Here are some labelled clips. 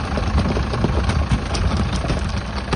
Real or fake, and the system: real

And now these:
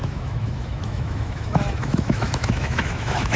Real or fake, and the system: fake, autoencoder, DAC-VAE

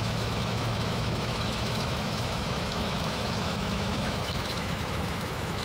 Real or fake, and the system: fake, autoencoder, DAC-VAE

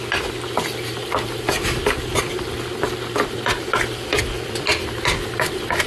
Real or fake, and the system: real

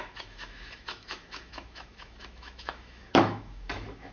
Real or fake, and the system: fake, autoencoder, DAC-VAE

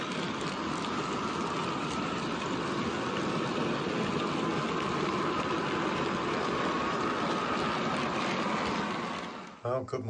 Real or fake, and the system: real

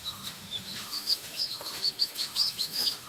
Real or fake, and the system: fake, autoencoder, DAC-VAE